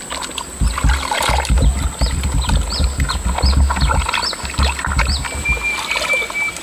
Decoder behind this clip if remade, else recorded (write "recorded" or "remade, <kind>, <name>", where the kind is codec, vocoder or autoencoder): recorded